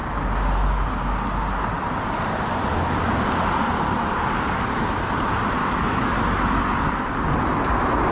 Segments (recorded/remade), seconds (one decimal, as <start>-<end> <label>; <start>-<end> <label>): 0.0-5.6 recorded; 5.6-6.1 remade; 6.1-8.1 recorded